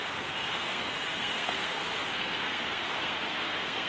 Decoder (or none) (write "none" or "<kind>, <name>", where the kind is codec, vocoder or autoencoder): codec, SNAC